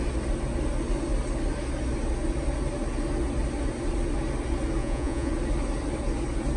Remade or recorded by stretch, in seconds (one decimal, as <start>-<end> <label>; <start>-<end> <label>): 0.0-4.8 recorded; 4.8-5.3 remade; 5.3-6.6 recorded